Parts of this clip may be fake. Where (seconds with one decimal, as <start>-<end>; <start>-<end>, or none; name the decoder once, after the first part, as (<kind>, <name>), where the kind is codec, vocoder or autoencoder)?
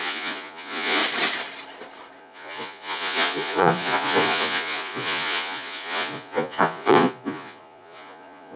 0.0-1.0 (vocoder, Vocos); 2.2-8.6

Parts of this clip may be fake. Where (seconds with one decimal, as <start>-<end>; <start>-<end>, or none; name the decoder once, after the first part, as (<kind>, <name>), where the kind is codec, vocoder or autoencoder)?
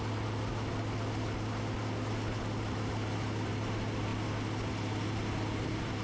none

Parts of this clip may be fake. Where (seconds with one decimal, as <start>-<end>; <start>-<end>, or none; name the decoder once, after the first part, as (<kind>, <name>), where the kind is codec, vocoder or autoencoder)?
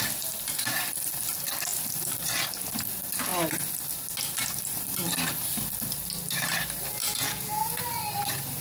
7.0-7.8 (vocoder, Vocos)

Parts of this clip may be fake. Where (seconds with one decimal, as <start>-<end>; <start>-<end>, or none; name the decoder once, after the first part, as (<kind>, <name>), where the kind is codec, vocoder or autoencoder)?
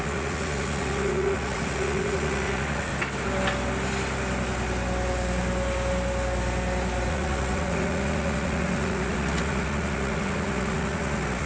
0.0-2.9 (vocoder, Vocos); 7.1-11.5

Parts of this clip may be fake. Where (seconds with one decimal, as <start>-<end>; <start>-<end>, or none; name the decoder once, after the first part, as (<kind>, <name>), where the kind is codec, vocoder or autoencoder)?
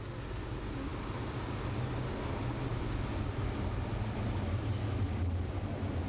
none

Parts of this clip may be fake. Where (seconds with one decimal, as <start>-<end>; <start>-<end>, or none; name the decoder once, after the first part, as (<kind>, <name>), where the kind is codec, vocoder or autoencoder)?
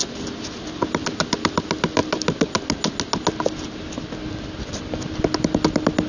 none